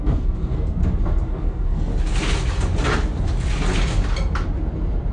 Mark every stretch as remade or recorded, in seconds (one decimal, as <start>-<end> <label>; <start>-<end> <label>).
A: 0.0-0.8 remade; 0.8-1.3 recorded; 1.3-1.9 remade; 1.9-5.1 recorded